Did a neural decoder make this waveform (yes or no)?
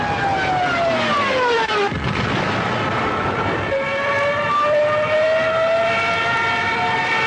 no